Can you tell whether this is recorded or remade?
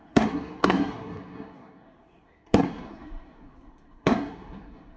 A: remade